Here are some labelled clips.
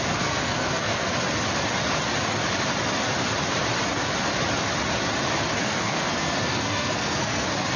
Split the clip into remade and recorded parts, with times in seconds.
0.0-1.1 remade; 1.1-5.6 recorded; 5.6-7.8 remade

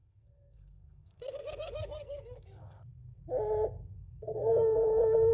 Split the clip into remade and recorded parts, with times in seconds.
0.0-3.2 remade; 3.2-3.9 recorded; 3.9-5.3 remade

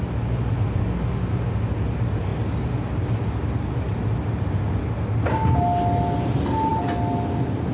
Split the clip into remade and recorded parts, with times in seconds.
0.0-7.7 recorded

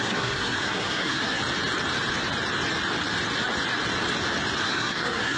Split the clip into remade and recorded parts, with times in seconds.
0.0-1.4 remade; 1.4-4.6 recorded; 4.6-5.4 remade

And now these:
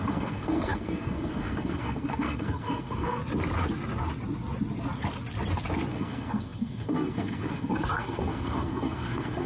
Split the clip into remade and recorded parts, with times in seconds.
0.0-3.2 remade; 3.2-5.9 recorded; 5.9-9.5 remade

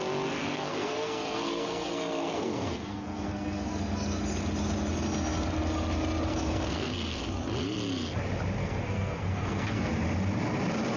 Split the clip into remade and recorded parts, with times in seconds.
0.0-0.4 recorded; 0.4-3.7 remade; 3.7-6.3 recorded; 6.3-7.2 remade; 7.2-8.6 recorded; 8.6-9.9 remade; 9.9-11.0 recorded

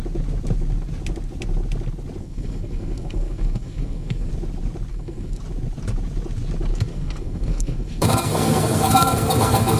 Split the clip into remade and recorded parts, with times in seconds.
0.0-2.2 recorded; 2.2-4.3 remade; 4.3-4.9 recorded; 4.9-5.4 remade; 5.4-6.7 recorded; 6.7-9.8 remade

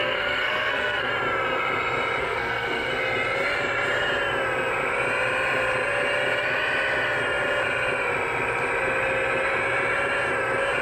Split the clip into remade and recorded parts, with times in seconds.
0.0-1.1 remade; 1.1-2.2 recorded; 2.2-2.9 remade; 2.9-10.8 recorded